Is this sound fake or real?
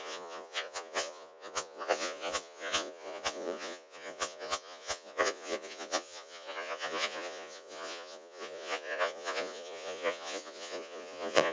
fake